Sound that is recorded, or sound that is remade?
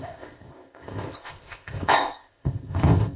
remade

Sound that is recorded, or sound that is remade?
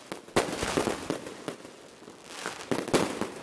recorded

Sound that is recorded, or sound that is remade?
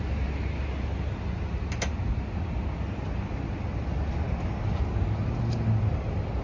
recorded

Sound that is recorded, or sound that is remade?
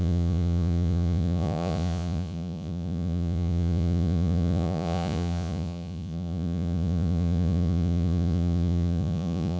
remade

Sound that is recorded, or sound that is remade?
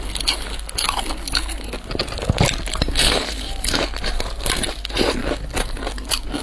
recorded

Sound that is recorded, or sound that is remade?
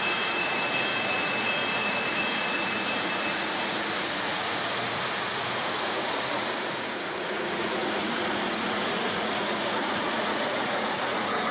remade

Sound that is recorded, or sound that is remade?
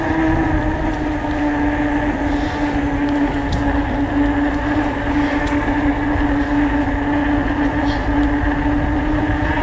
recorded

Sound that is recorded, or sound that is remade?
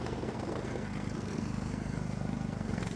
remade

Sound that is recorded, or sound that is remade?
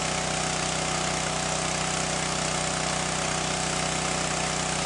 recorded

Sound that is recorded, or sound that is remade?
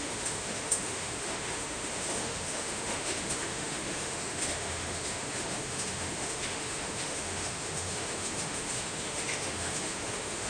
remade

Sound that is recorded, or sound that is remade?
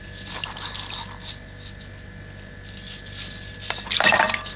recorded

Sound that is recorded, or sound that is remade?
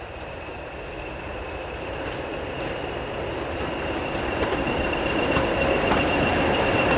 remade